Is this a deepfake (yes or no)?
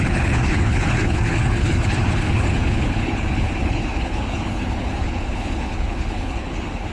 yes